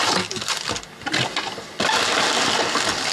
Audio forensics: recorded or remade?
recorded